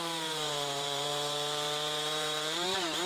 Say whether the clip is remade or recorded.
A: remade